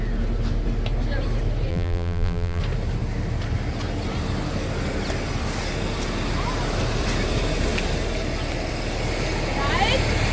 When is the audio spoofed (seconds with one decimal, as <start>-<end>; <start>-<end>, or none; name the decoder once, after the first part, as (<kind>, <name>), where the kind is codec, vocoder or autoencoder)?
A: 1.7-2.6 (vocoder, BigVGAN v2)